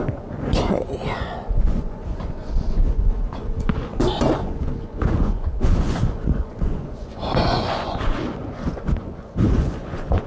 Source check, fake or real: fake